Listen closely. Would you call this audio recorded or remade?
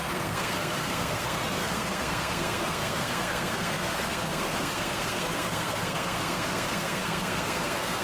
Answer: remade